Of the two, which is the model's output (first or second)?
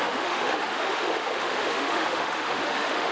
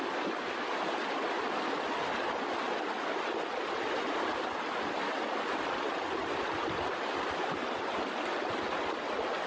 first